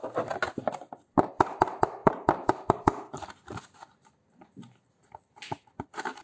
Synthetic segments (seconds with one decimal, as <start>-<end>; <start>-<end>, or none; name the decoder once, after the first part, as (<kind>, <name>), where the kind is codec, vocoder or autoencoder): 0.5-6.2 (vocoder, BigVGAN v2)